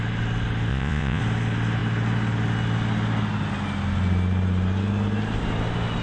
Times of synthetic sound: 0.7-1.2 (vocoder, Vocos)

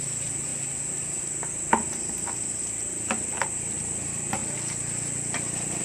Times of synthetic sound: none

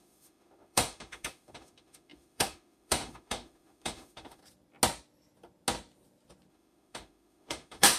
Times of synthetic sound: 0.0-4.4 (autoencoder, DAC-VAE); 6.5-8.0

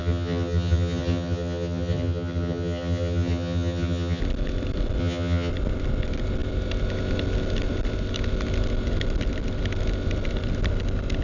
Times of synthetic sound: 0.0-4.2 (vocoder, HiFi-GAN); 5.0-5.5

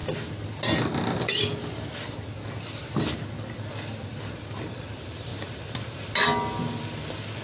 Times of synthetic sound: none